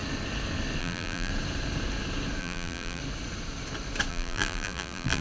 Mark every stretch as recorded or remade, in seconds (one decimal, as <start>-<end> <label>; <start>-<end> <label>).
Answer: 0.0-0.8 recorded; 0.8-1.3 remade; 1.3-2.4 recorded; 2.4-3.0 remade; 3.0-4.1 recorded; 4.1-5.2 remade